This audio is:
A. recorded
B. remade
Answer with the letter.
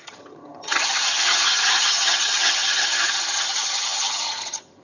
B